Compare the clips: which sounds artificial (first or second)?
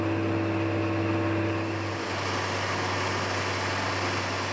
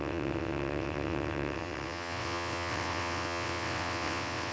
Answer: second